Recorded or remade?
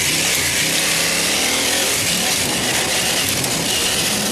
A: recorded